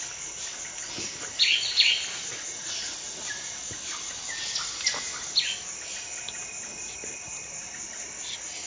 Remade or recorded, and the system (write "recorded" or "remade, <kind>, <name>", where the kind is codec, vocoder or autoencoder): recorded